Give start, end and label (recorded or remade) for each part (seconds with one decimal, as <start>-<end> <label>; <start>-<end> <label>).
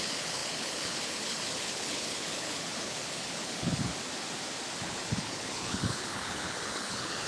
0.0-3.9 remade; 3.9-4.8 recorded; 4.8-7.3 remade